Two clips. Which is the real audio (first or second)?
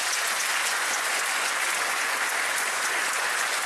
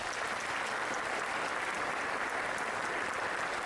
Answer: second